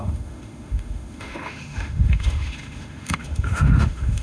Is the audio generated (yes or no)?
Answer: yes